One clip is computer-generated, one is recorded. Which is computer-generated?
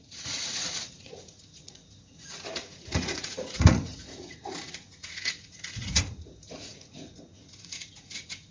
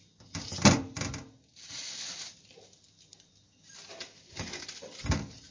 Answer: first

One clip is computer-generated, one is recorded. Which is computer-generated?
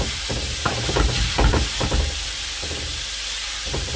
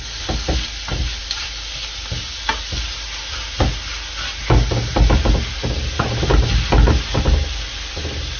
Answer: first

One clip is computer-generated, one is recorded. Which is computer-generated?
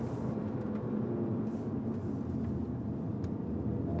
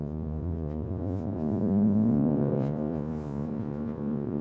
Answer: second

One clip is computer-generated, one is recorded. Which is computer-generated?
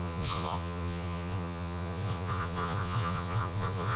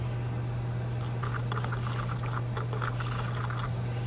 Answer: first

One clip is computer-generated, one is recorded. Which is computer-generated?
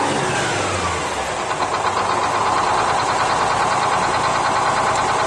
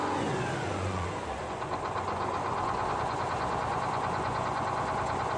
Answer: second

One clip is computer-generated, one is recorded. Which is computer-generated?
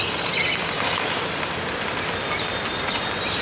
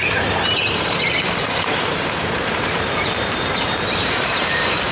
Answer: second